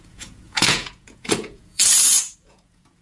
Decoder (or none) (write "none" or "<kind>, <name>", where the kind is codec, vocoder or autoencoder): vocoder, Vocos